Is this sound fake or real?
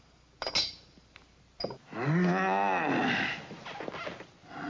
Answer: real